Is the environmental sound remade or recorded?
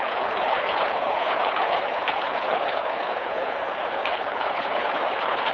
remade